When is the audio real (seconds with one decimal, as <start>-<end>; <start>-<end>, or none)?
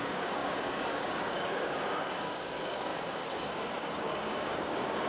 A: none